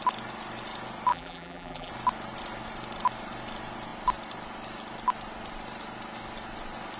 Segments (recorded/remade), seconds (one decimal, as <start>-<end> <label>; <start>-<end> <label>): 0.0-1.1 recorded; 1.1-1.9 remade; 1.9-7.0 recorded

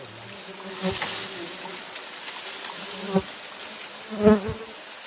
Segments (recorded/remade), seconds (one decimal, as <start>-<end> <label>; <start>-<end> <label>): 0.0-5.1 recorded